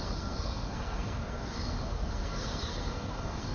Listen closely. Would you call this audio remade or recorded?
remade